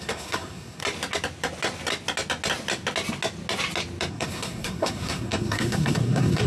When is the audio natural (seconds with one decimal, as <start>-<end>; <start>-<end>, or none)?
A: 0.8-4.1